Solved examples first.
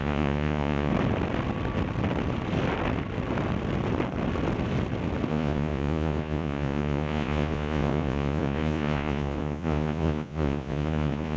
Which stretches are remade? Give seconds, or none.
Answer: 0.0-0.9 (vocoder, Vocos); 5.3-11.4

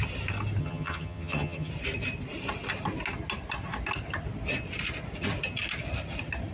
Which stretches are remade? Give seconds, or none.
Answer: 0.6-1.7 (vocoder, HiFi-GAN)

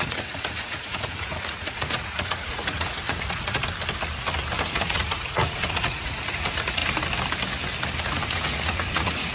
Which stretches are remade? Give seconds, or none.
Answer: 0.0-3.6 (vocoder, Vocos); 4.7-6.8; 8.0-9.3

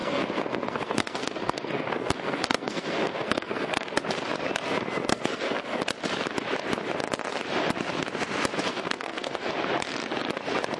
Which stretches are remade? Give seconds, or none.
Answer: 0.0-4.0 (codec, SNAC); 5.1-5.8; 8.7-9.5